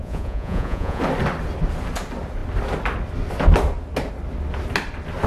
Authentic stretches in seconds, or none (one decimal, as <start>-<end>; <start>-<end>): 1.0-5.3